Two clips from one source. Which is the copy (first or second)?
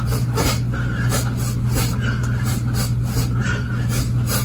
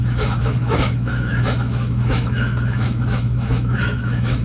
second